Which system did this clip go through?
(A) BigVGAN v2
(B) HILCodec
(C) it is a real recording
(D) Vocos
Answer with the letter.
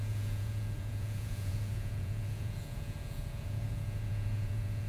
D